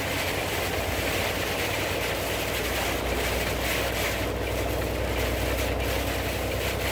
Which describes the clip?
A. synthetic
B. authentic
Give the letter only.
B